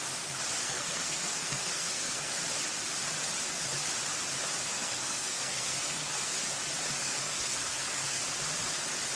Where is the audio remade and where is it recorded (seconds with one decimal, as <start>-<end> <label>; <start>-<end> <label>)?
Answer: 0.0-0.6 recorded; 0.6-2.3 remade; 2.3-4.6 recorded; 4.6-6.4 remade; 6.4-7.0 recorded; 7.0-8.2 remade; 8.2-9.2 recorded